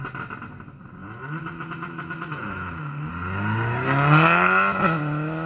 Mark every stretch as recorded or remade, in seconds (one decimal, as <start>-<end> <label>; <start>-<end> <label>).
0.0-1.0 recorded; 1.0-3.1 remade; 3.1-5.5 recorded